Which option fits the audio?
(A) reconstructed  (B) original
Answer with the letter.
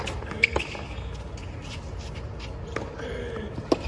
B